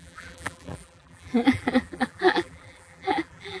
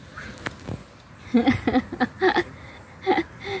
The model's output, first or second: first